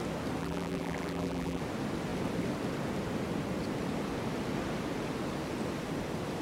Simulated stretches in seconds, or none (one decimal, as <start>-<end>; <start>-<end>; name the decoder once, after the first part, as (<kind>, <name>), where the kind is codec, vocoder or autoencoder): 0.4-1.6 (vocoder, BigVGAN v2)